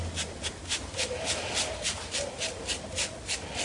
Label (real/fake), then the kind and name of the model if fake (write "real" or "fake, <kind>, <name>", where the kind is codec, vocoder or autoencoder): real